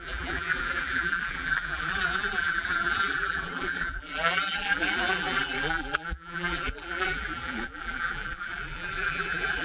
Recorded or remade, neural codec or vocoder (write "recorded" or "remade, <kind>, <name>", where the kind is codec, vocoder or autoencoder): remade, vocoder, BigVGAN v2